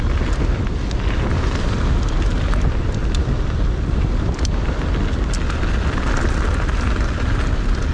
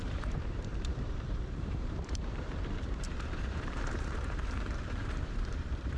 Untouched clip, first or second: first